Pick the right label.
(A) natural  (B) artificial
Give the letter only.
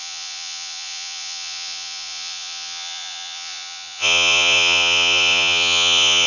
B